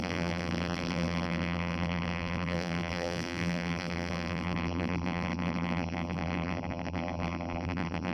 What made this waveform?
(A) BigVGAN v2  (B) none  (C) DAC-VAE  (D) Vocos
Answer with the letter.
A